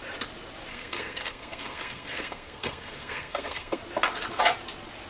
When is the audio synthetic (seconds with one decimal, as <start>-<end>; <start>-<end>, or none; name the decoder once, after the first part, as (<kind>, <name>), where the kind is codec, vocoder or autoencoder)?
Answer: 0.7-3.8 (codec, SNAC)